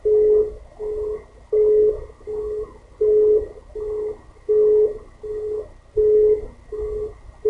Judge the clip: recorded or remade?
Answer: recorded